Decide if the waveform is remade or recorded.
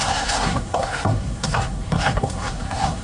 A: remade